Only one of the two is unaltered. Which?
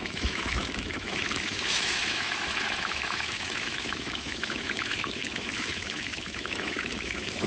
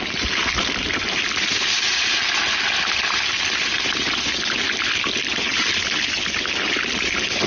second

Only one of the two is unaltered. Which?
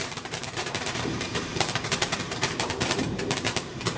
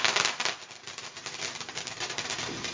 second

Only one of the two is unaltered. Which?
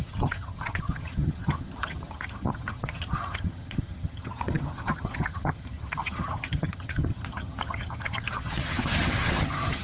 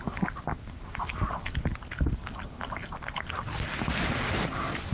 second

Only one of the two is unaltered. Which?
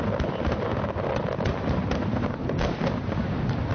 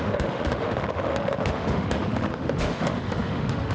first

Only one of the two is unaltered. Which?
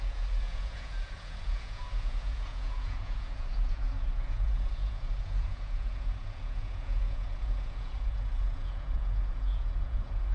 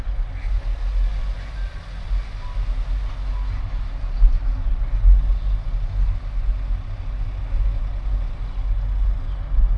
second